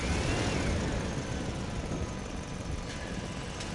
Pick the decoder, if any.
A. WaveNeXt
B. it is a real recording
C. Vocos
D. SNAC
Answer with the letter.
B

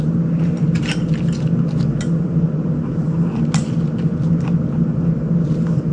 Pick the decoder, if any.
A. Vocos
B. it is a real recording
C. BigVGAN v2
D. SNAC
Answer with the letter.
B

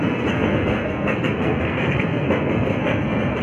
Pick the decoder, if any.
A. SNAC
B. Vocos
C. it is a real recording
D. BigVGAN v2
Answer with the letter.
A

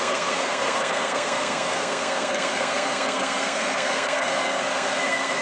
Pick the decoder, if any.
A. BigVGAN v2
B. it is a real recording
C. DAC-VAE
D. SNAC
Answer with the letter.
D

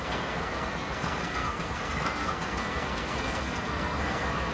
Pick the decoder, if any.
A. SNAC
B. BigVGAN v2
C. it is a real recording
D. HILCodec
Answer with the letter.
A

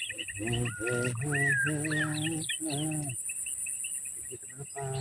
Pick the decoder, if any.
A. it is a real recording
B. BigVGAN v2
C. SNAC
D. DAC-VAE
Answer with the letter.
A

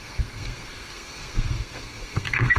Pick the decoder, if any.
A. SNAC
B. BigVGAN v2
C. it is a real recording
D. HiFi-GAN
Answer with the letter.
A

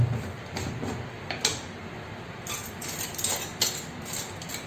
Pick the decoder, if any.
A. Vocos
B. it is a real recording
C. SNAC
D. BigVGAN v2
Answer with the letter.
B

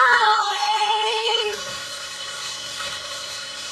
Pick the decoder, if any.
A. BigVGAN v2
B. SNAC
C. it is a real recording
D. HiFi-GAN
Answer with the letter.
B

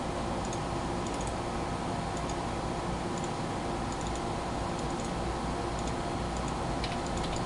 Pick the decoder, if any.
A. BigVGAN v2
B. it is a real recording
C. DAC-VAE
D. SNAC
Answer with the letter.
B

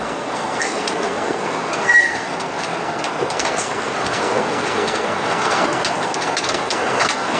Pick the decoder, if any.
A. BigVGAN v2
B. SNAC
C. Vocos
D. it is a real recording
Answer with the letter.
B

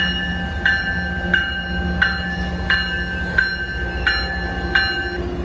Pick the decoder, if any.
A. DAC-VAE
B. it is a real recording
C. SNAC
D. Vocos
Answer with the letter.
B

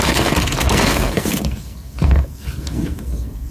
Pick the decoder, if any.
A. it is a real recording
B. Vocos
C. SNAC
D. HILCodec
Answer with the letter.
C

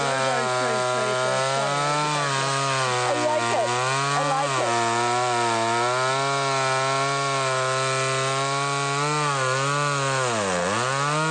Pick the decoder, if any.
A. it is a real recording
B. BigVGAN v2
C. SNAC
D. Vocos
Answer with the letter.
A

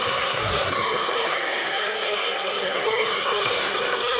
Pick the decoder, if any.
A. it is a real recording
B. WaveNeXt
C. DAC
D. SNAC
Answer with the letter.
D